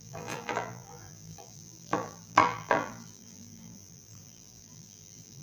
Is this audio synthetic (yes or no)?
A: yes